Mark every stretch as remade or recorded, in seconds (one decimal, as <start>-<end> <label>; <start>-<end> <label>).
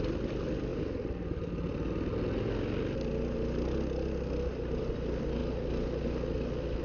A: 0.0-0.7 remade; 0.7-4.8 recorded; 4.8-5.4 remade; 5.4-6.8 recorded